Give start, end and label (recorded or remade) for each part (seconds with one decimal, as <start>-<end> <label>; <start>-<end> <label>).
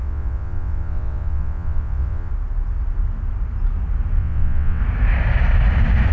0.0-2.3 remade; 2.3-4.2 recorded; 4.2-4.8 remade; 4.8-6.1 recorded